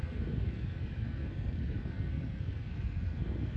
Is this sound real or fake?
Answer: fake